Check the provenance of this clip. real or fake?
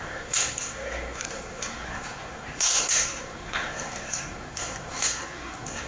fake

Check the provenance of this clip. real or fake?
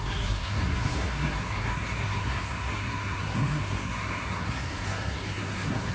fake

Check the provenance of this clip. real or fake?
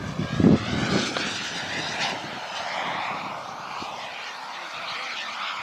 real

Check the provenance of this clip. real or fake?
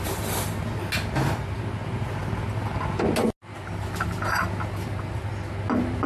real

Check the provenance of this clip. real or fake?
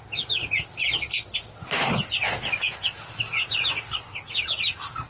real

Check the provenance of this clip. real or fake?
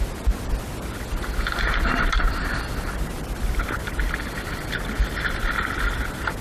real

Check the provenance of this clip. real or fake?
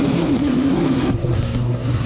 fake